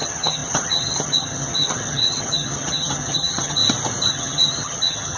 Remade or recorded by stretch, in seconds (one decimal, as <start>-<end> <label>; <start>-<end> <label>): 0.0-3.6 remade; 3.6-4.1 recorded; 4.1-5.2 remade